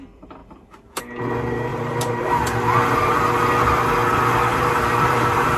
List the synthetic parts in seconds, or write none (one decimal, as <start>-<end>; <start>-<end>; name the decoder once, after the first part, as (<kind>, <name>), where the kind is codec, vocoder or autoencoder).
1.7-2.3 (vocoder, BigVGAN v2); 4.5-5.6